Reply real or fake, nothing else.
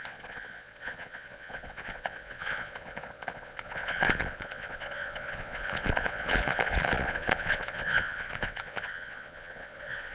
fake